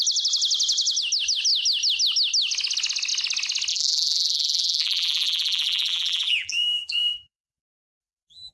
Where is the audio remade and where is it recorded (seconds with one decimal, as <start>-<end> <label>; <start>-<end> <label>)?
0.0-3.7 recorded; 3.7-8.5 remade

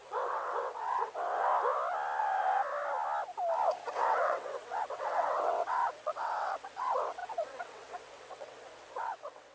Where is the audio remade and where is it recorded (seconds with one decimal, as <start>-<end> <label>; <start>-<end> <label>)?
0.0-1.5 remade; 1.5-3.9 recorded; 3.9-9.5 remade

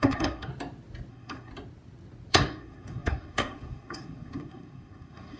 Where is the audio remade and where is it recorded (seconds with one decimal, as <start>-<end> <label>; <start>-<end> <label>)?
0.0-0.5 remade; 0.5-1.1 recorded; 1.1-1.5 remade; 1.5-2.3 recorded; 2.3-5.4 remade

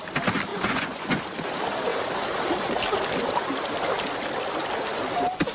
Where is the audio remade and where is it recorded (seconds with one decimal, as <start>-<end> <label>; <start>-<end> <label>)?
0.0-0.5 recorded; 0.5-1.2 remade; 1.2-5.5 recorded

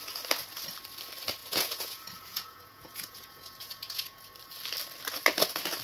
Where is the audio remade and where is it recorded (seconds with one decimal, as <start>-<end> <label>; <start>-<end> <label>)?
0.0-1.4 recorded; 1.4-4.3 remade; 4.3-5.8 recorded

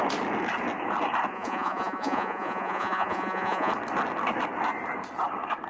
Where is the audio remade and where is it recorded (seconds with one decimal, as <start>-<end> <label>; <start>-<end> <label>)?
0.0-1.3 recorded; 1.3-3.7 remade; 3.7-5.7 recorded

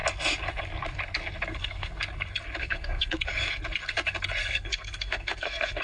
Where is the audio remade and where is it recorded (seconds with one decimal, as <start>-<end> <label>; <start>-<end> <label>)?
0.0-1.5 recorded; 1.5-2.0 remade; 2.0-2.6 recorded; 2.6-3.2 remade; 3.2-4.4 recorded; 4.4-5.8 remade